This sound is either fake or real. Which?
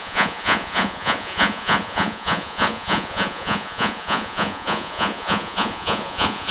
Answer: fake